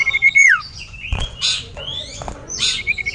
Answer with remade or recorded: remade